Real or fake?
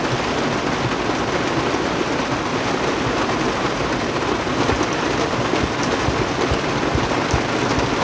real